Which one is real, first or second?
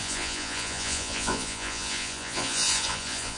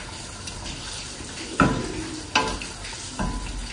second